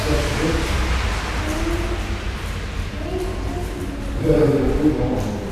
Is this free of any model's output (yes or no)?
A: yes